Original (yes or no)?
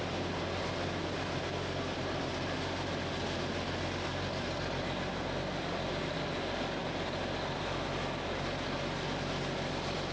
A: yes